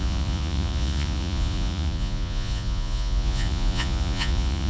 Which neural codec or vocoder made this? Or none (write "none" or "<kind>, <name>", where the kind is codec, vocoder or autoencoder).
vocoder, Vocos